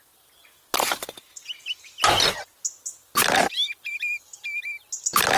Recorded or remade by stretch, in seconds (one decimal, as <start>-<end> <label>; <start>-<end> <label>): 0.0-5.4 recorded